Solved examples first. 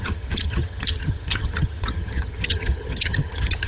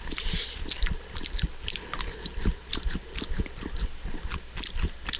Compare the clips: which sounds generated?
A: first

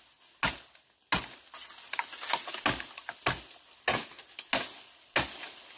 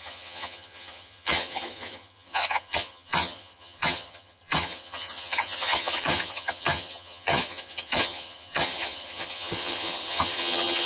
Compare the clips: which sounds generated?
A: second